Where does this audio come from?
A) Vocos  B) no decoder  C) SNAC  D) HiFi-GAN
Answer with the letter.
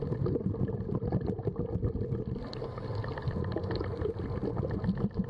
B